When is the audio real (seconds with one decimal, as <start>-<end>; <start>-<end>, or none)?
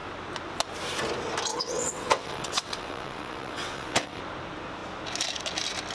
0.0-1.5; 4.2-5.9